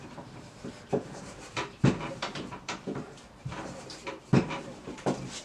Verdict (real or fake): fake